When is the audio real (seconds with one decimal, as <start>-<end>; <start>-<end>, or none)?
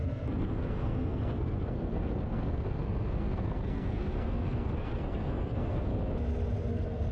5.9-6.6